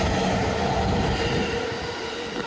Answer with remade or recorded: recorded